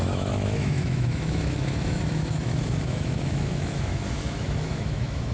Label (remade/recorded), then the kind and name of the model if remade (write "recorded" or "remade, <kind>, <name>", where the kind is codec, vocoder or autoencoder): remade, autoencoder, DAC-VAE